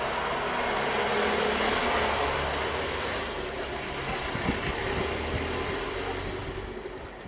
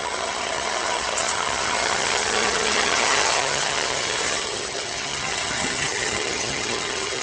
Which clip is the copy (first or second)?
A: second